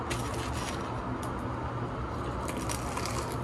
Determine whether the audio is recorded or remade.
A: recorded